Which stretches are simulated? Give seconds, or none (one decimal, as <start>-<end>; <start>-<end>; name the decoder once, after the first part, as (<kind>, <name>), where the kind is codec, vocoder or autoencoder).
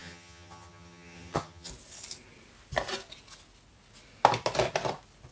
0.0-1.7 (vocoder, HiFi-GAN)